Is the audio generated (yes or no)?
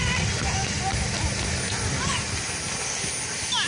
no